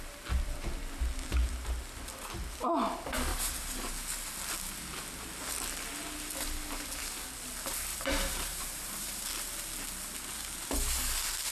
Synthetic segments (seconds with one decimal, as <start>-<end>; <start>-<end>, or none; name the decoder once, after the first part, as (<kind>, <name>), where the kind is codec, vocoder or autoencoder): 3.3-3.9 (vocoder, BigVGAN v2); 7.9-9.3